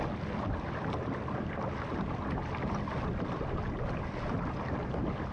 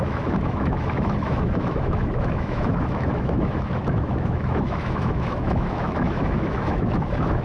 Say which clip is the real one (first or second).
first